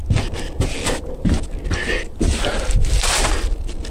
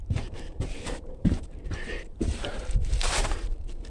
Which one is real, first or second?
first